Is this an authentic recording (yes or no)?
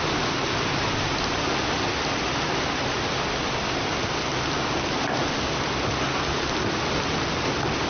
yes